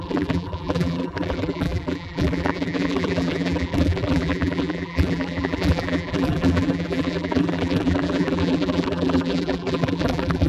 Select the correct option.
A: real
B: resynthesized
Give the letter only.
B